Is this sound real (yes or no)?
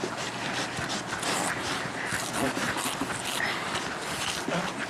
yes